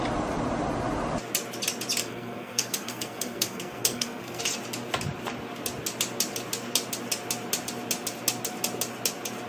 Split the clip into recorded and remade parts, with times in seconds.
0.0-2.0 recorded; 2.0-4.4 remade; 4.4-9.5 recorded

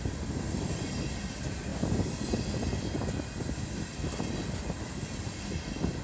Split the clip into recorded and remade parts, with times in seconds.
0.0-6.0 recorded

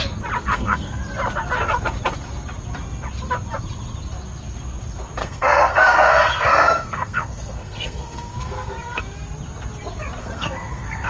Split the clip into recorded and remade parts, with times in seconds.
0.0-0.4 recorded; 0.4-1.0 remade; 1.0-5.2 recorded; 5.2-9.0 remade; 9.0-10.2 recorded; 10.2-11.1 remade

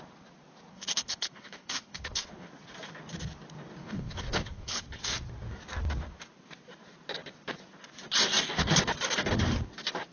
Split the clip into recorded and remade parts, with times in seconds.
0.0-0.7 recorded; 0.7-2.5 remade; 2.5-3.8 recorded; 3.8-4.8 remade; 4.8-10.1 recorded

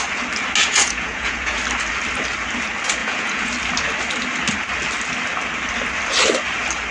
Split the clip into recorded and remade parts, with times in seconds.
0.0-0.6 recorded; 0.6-1.6 remade; 1.6-3.0 recorded; 3.0-3.5 remade; 3.5-6.9 recorded